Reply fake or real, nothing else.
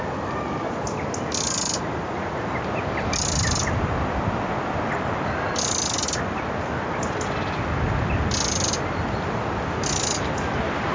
real